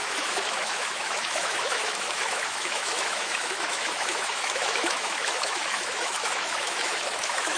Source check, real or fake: fake